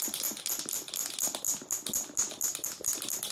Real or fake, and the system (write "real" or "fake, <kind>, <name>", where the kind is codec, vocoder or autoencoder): real